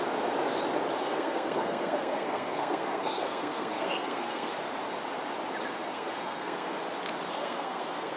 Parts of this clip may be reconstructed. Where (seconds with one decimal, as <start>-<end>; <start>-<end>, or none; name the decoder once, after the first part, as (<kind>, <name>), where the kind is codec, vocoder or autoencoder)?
1.0-4.5 (codec, SNAC); 5.9-6.8; 7.3-8.2